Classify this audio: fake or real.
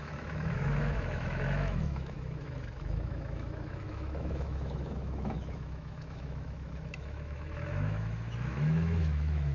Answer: fake